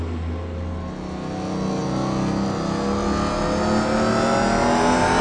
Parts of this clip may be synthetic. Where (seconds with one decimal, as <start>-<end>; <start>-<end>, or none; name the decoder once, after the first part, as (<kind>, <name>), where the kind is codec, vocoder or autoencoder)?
none

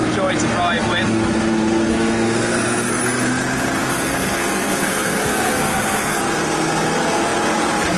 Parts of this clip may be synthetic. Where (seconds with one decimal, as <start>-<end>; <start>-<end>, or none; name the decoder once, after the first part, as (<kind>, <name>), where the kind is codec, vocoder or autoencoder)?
1.9-3.0 (codec, SNAC); 3.9-6.2

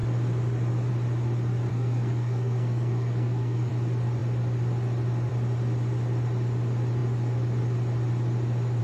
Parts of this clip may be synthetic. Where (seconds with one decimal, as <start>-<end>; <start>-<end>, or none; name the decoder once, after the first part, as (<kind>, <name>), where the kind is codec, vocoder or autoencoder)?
1.7-3.7 (codec, SNAC)

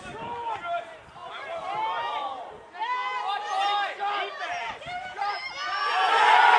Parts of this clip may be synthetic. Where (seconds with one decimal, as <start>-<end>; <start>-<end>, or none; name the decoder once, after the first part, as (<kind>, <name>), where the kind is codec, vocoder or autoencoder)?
none

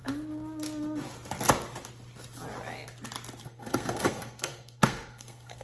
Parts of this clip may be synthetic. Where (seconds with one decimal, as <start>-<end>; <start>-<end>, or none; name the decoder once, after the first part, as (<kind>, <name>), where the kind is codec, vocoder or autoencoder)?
3.4-5.6 (codec, SNAC)

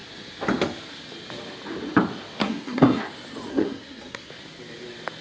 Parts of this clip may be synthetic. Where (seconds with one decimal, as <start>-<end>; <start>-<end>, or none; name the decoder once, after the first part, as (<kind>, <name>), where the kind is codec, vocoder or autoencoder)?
2.4-3.0 (codec, SNAC); 3.5-4.3